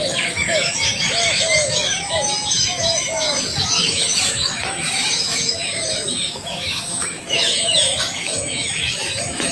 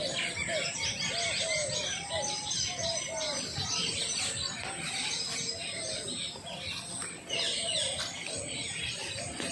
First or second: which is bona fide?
second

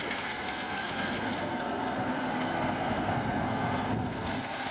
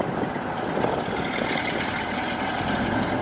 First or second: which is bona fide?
second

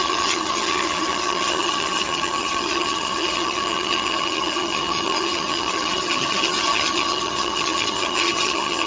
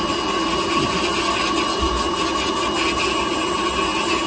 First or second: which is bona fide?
second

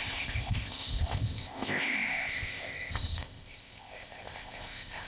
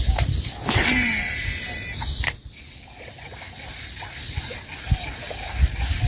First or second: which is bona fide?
second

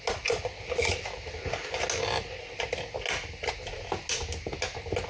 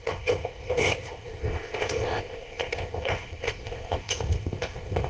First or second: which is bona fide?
first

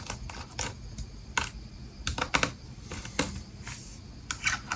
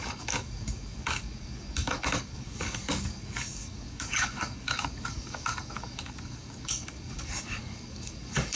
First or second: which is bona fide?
first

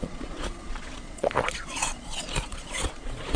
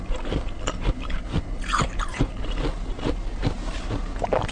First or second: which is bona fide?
second